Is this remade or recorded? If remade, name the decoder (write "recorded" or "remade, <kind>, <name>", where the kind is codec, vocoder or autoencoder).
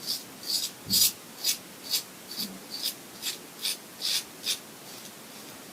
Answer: recorded